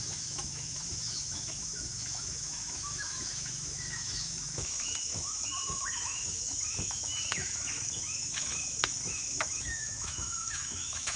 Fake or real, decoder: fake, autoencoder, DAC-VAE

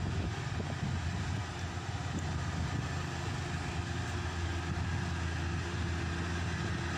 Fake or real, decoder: real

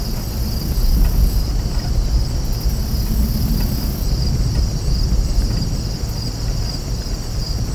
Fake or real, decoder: real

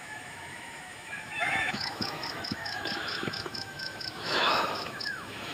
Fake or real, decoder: fake, autoencoder, DAC-VAE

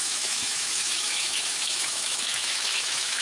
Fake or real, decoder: fake, autoencoder, DAC-VAE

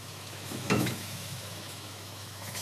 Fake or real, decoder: fake, autoencoder, DAC-VAE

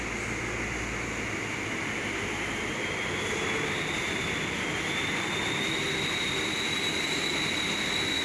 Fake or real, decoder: real